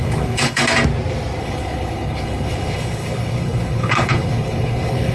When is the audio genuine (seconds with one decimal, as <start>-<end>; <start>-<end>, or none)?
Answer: 0.6-1.4